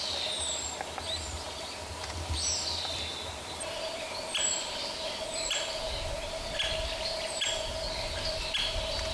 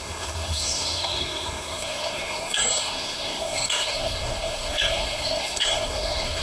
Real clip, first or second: first